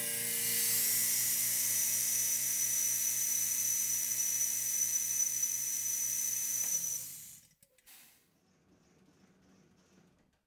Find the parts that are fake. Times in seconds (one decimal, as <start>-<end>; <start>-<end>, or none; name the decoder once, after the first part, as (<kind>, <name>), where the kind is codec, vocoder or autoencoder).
1.0-2.1 (vocoder, BigVGAN v2); 3.3-4.1; 5.6-6.9